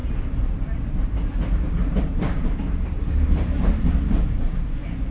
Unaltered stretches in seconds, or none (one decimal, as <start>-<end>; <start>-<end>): 3.1-5.1